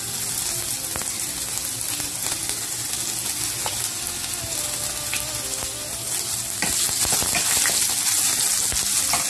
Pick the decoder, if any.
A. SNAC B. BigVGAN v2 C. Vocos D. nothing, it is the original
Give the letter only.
D